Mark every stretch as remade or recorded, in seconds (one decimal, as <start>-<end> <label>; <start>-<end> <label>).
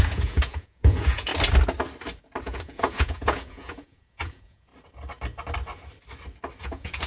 0.0-1.3 remade; 1.3-2.4 recorded; 2.4-4.7 remade; 4.7-6.6 recorded; 6.6-7.1 remade